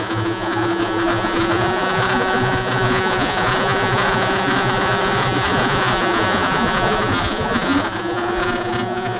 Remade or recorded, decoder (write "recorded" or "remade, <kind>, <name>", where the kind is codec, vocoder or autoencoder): remade, vocoder, Vocos